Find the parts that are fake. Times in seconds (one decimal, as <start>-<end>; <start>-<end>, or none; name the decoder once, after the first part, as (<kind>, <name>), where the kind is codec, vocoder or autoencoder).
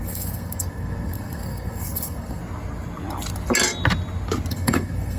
0.0-2.4 (codec, SNAC); 4.5-5.2